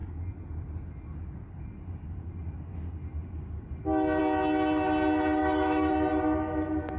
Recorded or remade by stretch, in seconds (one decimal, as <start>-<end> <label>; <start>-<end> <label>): 0.0-5.4 recorded; 5.4-5.9 remade; 5.9-7.0 recorded